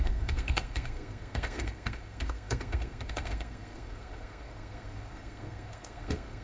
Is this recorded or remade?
remade